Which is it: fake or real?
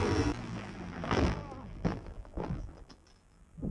fake